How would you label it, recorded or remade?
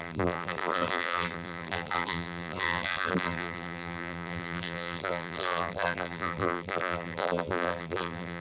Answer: remade